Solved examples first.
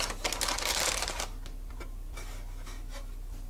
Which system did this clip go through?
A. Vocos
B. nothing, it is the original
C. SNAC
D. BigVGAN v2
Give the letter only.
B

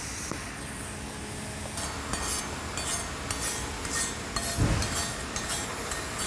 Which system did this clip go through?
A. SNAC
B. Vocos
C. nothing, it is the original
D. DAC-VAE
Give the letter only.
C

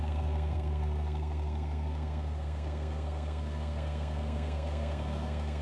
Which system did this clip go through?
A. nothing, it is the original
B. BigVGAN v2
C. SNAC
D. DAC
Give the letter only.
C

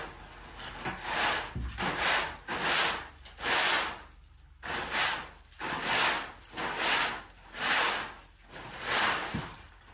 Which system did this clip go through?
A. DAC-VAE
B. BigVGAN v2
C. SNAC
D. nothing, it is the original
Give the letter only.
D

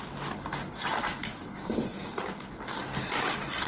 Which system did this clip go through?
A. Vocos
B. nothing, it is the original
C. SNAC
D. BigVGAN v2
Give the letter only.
B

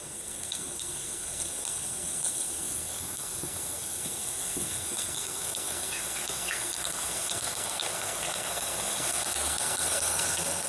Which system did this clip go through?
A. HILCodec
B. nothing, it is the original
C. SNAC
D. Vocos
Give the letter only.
C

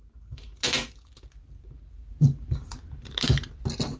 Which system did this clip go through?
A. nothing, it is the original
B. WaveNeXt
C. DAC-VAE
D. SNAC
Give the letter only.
A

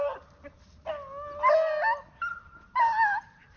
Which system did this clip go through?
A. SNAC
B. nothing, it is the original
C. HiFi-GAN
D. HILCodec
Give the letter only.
B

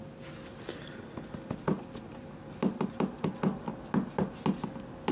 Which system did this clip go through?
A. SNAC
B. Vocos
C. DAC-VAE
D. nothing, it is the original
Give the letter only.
D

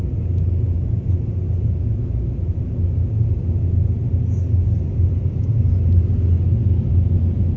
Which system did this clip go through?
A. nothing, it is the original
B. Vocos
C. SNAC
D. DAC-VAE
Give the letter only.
A